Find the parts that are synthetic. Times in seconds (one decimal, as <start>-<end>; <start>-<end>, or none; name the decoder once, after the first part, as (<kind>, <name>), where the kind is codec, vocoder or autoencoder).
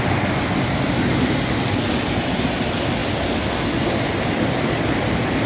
none